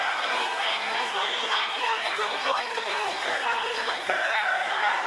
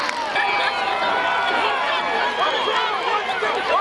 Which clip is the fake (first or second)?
first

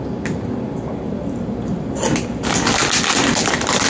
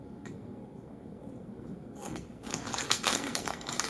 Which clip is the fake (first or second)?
second